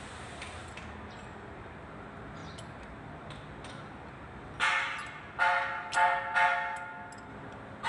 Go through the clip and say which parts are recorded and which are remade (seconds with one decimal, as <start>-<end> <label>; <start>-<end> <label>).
0.0-7.9 recorded